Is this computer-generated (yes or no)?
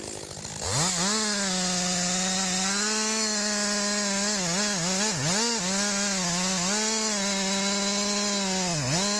no